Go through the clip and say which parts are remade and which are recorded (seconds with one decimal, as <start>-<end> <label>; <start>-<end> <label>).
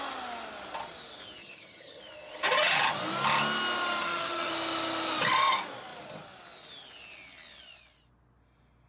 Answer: 0.0-1.4 recorded; 1.4-2.0 remade; 2.0-4.0 recorded; 4.0-4.5 remade; 4.5-8.9 recorded